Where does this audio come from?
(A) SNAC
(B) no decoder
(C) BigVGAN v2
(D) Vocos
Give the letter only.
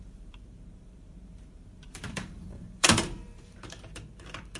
C